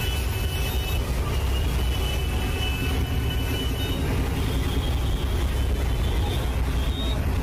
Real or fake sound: real